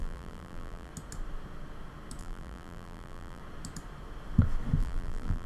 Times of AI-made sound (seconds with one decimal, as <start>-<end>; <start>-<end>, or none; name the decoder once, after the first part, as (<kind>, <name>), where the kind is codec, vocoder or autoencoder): 0.0-0.9 (vocoder, BigVGAN v2); 2.2-3.4; 4.8-5.5